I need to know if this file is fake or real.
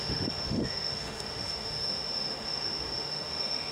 fake